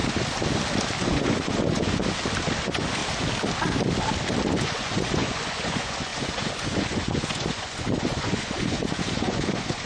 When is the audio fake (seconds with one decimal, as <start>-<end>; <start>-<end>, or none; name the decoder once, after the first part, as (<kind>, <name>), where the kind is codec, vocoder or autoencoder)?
1.0-2.0 (vocoder, Vocos); 2.6-3.0; 4.6-9.9